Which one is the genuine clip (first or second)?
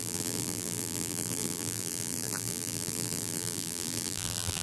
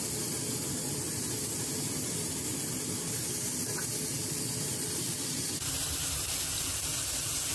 second